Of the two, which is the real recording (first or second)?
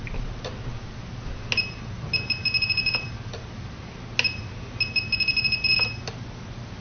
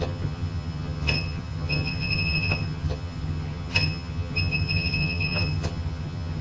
first